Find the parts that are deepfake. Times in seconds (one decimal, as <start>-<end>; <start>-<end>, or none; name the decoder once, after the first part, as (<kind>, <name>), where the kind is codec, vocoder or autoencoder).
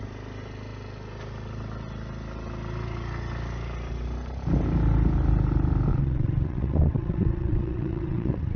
5.9-8.6 (vocoder, WaveNeXt)